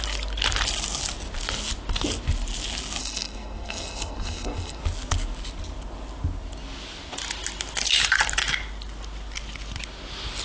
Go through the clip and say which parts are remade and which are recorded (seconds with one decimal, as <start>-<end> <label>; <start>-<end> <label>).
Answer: 0.0-3.0 recorded; 3.0-4.8 remade; 4.8-10.4 recorded